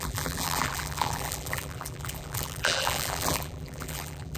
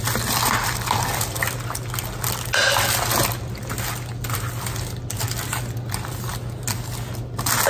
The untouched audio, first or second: second